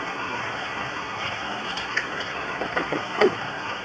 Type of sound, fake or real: fake